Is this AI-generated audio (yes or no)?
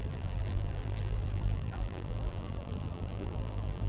yes